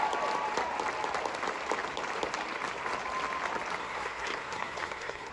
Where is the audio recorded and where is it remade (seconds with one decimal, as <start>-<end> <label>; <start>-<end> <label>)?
0.0-3.8 recorded; 3.8-5.3 remade